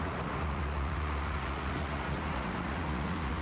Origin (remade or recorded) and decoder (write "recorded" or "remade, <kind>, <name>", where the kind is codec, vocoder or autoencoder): remade, vocoder, Vocos